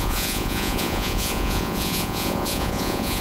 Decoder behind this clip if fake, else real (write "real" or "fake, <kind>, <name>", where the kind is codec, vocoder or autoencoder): fake, vocoder, Vocos